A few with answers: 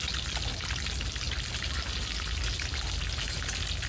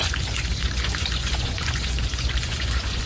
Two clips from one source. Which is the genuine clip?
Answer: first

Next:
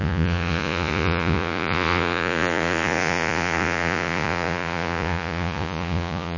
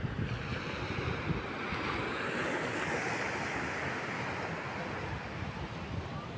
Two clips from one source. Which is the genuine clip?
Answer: second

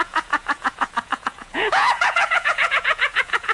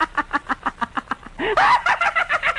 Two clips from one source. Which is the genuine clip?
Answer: second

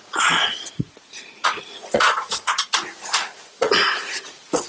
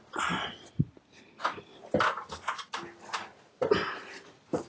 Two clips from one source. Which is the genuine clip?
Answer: second